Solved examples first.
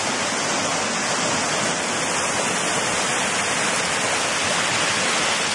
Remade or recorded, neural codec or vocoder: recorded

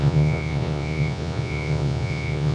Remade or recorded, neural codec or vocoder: remade, vocoder, Vocos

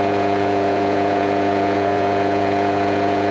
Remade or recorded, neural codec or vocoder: remade, vocoder, Vocos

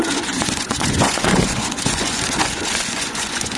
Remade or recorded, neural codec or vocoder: remade, vocoder, Vocos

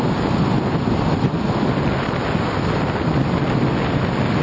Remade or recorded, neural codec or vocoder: recorded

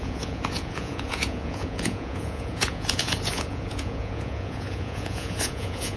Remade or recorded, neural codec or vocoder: remade, vocoder, Vocos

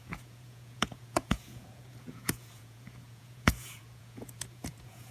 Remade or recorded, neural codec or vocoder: remade, vocoder, Vocos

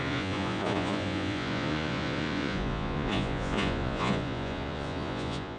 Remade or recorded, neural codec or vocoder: remade, vocoder, Vocos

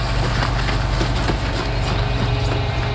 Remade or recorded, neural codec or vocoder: recorded